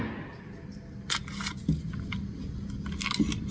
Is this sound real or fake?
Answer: real